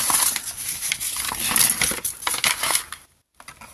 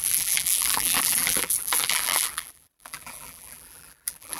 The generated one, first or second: second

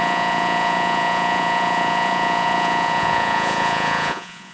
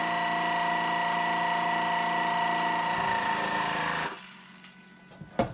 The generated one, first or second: first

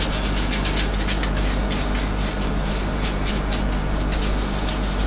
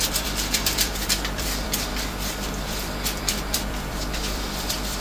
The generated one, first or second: second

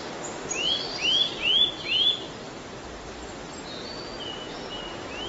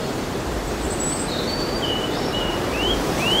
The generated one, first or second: second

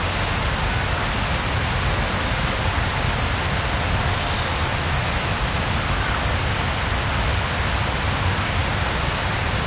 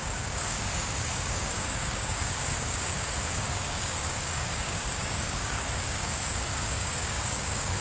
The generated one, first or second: second